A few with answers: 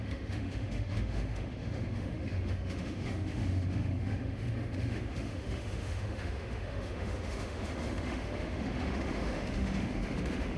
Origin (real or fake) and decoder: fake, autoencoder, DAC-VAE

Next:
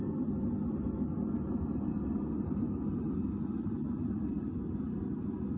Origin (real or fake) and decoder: real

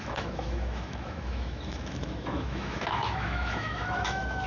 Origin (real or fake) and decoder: fake, autoencoder, DAC-VAE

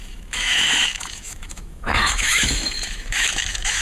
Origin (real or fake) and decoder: fake, autoencoder, DAC-VAE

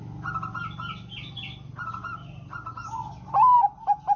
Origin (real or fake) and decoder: real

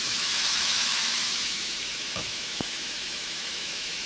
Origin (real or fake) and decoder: fake, autoencoder, DAC-VAE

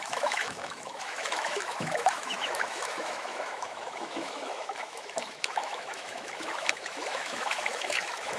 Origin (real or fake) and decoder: fake, autoencoder, DAC-VAE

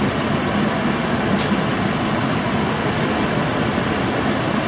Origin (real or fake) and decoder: real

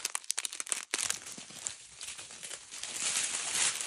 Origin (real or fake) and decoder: real